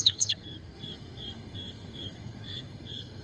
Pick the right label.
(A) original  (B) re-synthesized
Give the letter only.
B